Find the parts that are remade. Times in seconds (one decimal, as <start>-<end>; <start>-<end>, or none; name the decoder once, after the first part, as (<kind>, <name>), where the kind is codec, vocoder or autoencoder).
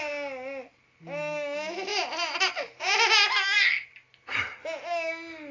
none